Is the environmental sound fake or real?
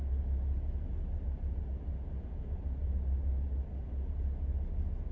real